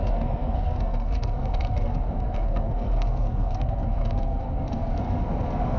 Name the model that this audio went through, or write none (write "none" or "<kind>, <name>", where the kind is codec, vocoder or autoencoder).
codec, SNAC